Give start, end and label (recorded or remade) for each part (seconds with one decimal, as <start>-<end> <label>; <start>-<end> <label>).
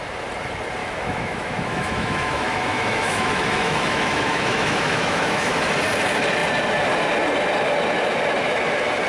0.0-0.8 recorded; 0.8-5.7 remade; 5.7-9.1 recorded